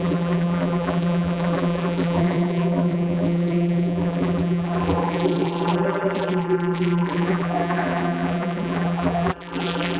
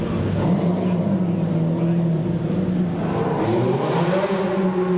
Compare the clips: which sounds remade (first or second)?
first